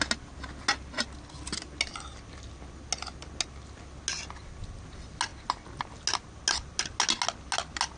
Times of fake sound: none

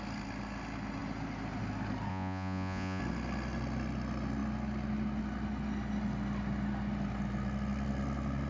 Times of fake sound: 2.1-3.0

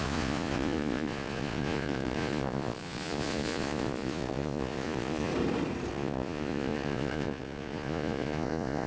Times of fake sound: 0.0-5.3; 5.9-8.9

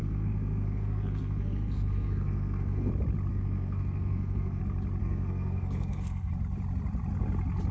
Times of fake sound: 0.0-2.9; 3.3-4.6; 5.0-6.3

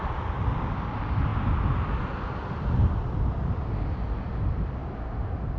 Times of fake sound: none

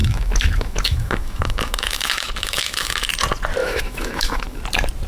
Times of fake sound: 0.0-3.1; 3.6-4.6

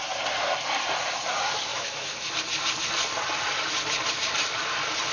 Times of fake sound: 1.7-2.3